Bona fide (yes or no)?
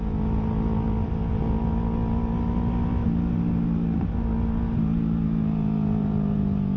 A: yes